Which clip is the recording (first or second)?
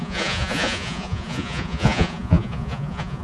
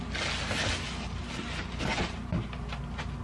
second